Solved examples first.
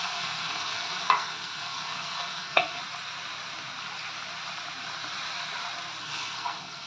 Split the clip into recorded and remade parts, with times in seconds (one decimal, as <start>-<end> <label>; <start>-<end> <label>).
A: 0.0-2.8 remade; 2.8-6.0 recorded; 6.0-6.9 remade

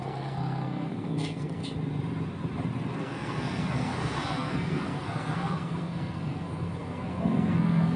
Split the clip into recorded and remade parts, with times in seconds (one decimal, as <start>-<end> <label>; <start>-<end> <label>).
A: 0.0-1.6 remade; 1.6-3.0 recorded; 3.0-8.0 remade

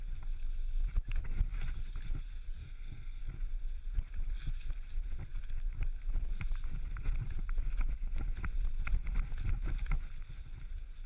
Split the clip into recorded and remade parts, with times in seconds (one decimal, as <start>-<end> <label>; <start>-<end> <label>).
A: 0.0-2.6 recorded; 2.6-3.2 remade; 3.2-11.1 recorded

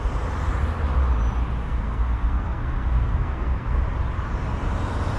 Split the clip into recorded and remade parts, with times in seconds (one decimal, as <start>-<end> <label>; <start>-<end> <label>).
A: 0.0-1.6 recorded; 1.6-3.8 remade; 3.8-5.2 recorded

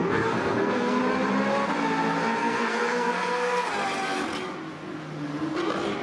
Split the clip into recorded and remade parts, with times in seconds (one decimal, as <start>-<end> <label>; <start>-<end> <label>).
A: 0.0-1.0 remade; 1.0-2.4 recorded; 2.4-3.7 remade; 3.7-6.0 recorded